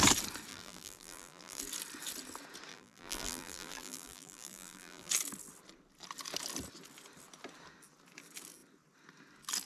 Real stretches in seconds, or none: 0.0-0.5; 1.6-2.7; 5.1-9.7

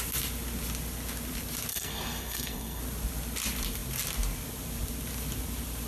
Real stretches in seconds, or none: 0.0-1.7; 2.8-5.9